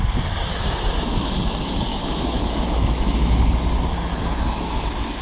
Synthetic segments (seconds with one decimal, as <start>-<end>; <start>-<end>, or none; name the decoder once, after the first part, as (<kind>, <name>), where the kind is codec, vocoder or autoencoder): 0.5-1.3 (autoencoder, DAC-VAE); 1.9-3.4; 4.1-4.8